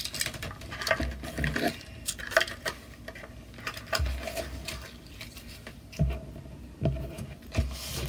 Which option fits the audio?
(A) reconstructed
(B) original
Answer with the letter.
B